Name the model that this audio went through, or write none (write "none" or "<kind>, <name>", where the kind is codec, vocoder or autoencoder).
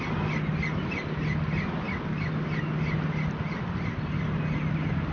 none